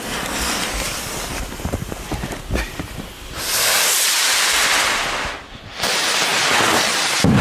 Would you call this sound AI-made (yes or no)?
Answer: no